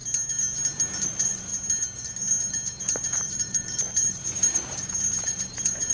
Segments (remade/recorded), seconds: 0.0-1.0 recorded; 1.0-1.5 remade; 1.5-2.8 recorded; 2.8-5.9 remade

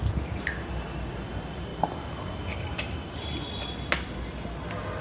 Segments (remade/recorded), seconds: 0.0-1.7 recorded; 1.7-3.4 remade; 3.4-5.0 recorded

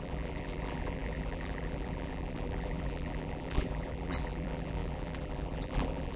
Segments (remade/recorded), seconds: 0.0-6.2 remade